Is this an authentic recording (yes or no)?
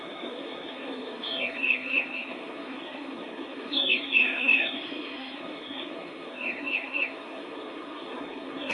no